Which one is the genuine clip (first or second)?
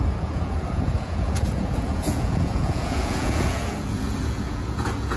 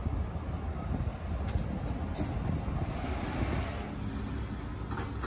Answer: second